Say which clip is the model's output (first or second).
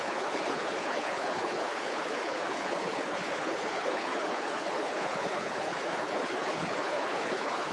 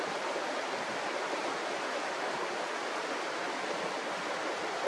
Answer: first